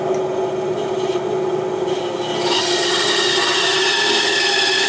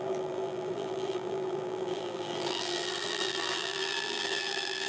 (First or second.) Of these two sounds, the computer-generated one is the second